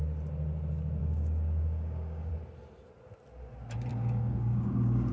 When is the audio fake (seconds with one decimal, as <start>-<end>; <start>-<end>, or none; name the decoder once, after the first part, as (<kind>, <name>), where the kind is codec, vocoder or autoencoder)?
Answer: 1.0-2.3 (codec, DAC); 3.9-5.1